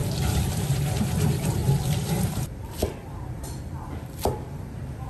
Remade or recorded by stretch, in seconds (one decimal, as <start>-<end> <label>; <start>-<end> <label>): 0.0-0.5 recorded; 0.5-5.1 remade

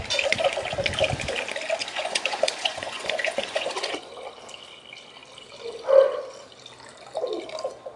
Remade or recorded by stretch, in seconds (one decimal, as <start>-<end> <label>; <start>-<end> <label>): 0.0-1.8 recorded; 1.8-4.1 remade; 4.1-8.0 recorded

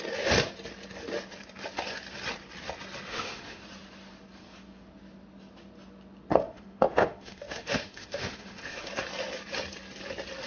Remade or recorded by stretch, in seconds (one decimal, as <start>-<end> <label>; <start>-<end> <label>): 0.0-3.1 recorded; 3.1-3.6 remade; 3.6-6.3 recorded; 6.3-8.9 remade; 8.9-10.5 recorded

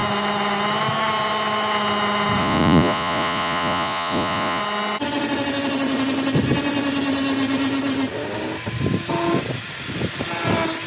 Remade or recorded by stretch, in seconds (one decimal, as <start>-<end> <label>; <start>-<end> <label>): 0.0-2.4 recorded; 2.4-4.6 remade; 4.6-10.9 recorded

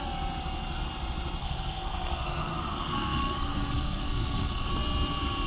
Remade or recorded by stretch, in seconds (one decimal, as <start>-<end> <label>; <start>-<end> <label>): 0.0-1.4 recorded; 1.4-4.7 remade; 4.7-5.5 recorded

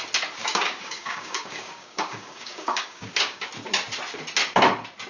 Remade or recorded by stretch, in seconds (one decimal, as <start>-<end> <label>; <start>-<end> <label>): 0.0-0.4 recorded; 0.4-3.5 remade; 3.5-5.1 recorded